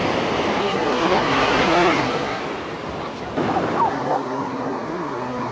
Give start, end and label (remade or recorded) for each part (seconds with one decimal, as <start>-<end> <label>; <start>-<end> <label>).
0.0-0.6 recorded; 0.6-2.4 remade; 2.4-3.9 recorded; 3.9-5.5 remade